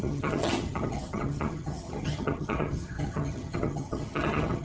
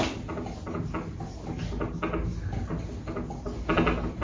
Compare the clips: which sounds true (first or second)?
second